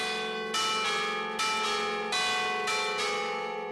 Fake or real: real